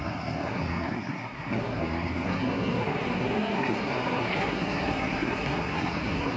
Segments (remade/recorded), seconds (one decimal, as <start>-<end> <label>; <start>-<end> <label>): 0.0-6.4 remade